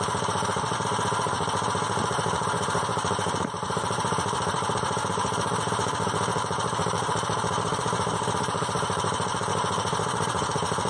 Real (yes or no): no